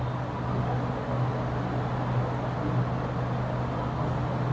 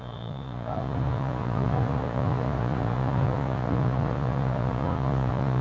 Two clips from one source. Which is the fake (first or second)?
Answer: second